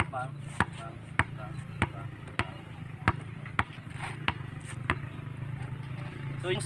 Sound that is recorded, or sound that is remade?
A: recorded